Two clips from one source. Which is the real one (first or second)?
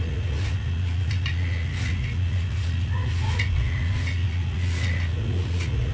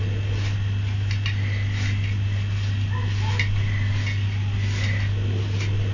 second